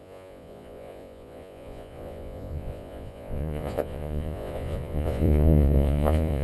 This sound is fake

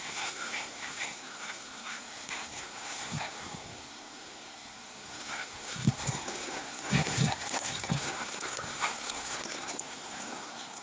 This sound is fake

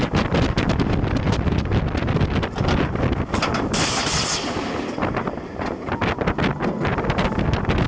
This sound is real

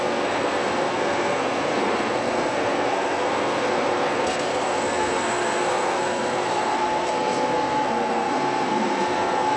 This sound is fake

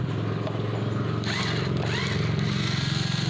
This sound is real